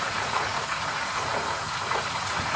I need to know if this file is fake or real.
fake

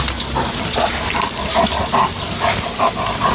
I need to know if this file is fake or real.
real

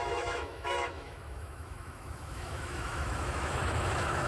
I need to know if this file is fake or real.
fake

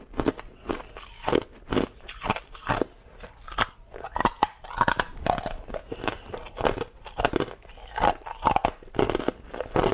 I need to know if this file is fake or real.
real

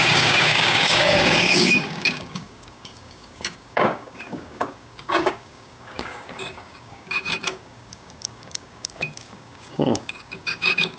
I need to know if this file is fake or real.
fake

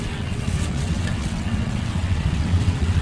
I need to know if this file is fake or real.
fake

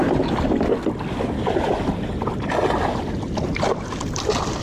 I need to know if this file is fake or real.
real